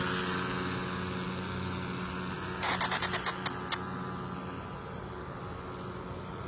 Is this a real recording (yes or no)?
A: yes